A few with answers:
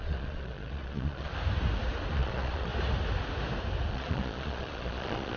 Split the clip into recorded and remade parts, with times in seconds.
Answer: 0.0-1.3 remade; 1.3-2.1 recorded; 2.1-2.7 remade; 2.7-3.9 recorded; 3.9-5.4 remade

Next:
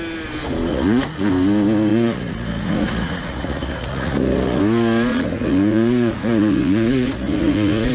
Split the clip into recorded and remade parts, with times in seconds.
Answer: 0.0-0.7 recorded; 0.7-1.3 remade; 1.3-1.9 recorded; 1.9-4.6 remade; 4.6-5.1 recorded; 5.1-7.9 remade

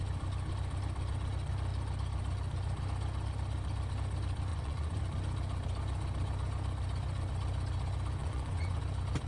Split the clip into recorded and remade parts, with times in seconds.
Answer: 0.0-4.5 recorded; 4.5-5.0 remade; 5.0-8.2 recorded; 8.2-8.8 remade; 8.8-9.3 recorded

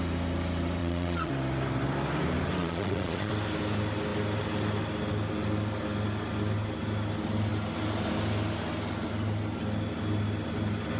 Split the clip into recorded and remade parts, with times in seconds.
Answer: 0.0-0.8 recorded; 0.8-1.3 remade; 1.3-2.6 recorded; 2.6-3.3 remade; 3.3-11.0 recorded

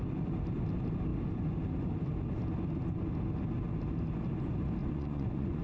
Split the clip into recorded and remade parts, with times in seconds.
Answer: 0.0-4.8 recorded; 4.8-5.6 remade

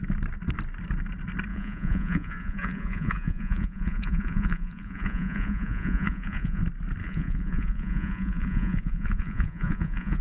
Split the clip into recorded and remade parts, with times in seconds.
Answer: 0.0-1.5 recorded; 1.5-6.6 remade; 6.6-7.0 recorded; 7.0-10.2 remade

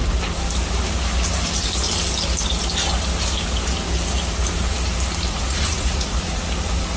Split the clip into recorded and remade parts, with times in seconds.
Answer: 0.0-5.3 recorded; 5.3-6.4 remade; 6.4-7.0 recorded